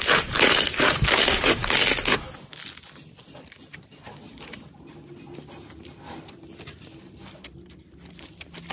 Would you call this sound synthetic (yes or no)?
no